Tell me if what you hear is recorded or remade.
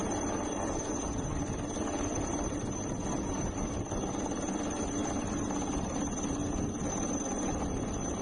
recorded